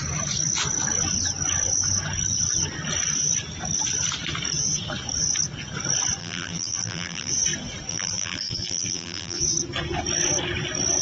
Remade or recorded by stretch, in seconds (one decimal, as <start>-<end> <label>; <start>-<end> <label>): 0.0-6.2 recorded; 6.2-7.3 remade; 7.3-7.9 recorded; 7.9-9.4 remade; 9.4-11.0 recorded